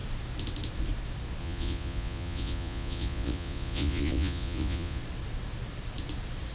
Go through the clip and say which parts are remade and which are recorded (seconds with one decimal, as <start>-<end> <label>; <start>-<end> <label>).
0.0-1.4 recorded; 1.4-5.0 remade; 5.0-6.5 recorded